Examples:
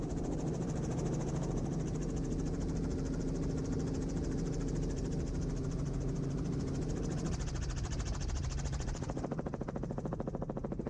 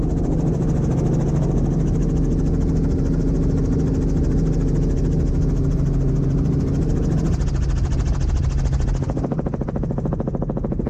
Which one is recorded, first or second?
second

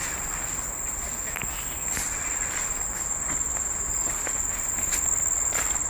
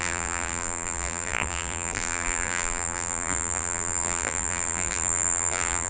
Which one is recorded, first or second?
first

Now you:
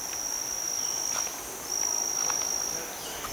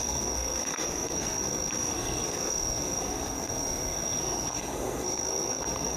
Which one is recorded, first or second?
first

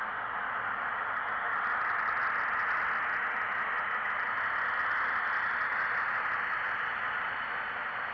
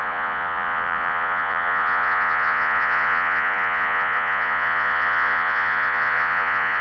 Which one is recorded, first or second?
first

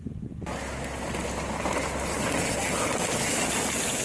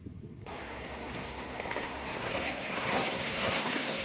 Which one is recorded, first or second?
first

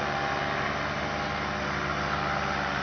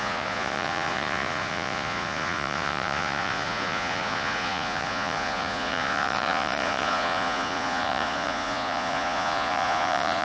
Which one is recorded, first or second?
first